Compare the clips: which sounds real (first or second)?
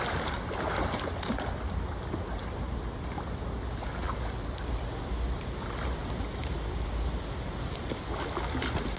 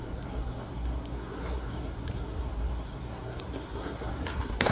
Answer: first